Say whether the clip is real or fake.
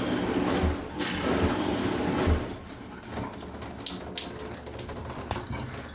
real